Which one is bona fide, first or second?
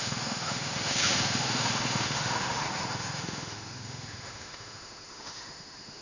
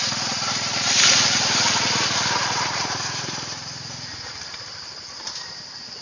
second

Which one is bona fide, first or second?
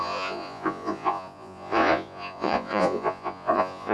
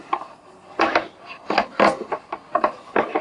second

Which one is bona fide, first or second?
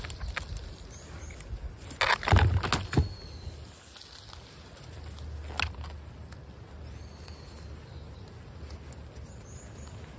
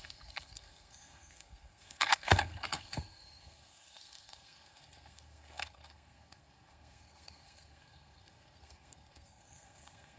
first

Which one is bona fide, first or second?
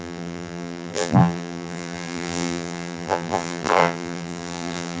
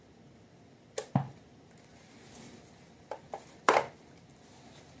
second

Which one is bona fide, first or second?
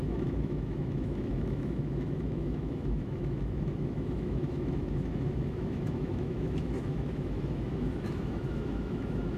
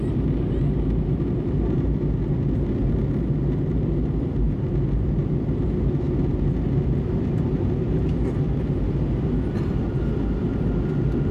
second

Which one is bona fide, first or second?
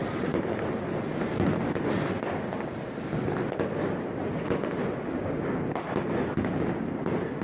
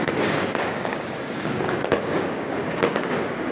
first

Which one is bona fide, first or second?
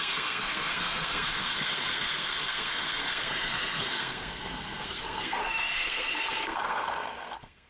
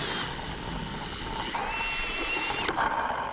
second